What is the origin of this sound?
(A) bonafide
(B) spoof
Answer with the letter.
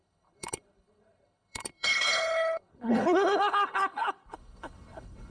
B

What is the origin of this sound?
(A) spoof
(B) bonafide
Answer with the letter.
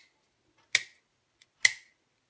B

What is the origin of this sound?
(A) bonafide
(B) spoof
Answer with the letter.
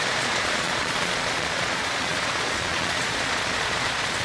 B